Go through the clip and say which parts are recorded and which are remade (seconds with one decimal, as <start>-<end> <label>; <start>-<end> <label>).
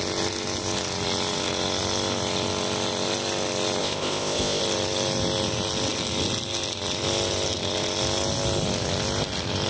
0.0-3.8 recorded; 3.8-4.6 remade; 4.6-9.7 recorded